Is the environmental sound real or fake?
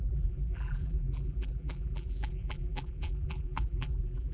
fake